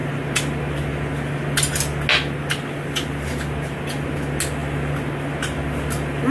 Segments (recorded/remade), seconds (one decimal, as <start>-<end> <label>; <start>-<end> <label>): 0.0-6.3 recorded

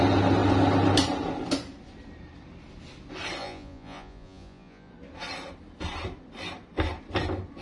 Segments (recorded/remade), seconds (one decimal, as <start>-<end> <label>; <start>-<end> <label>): 0.0-3.4 recorded; 3.4-4.9 remade; 4.9-7.6 recorded

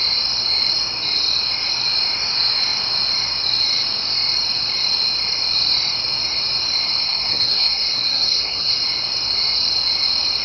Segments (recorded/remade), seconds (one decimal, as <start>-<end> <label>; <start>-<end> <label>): 0.0-7.0 recorded; 7.0-8.8 remade; 8.8-10.4 recorded